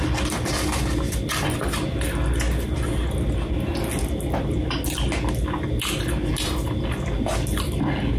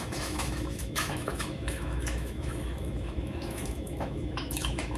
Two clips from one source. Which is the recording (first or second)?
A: first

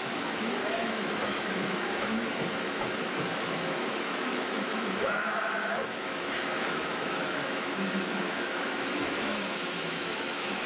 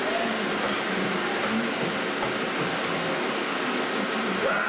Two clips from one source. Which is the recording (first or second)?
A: second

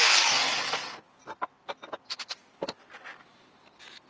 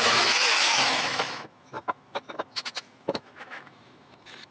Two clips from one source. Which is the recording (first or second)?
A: first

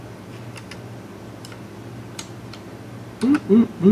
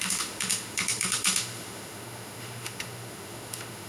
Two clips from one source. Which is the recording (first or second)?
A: first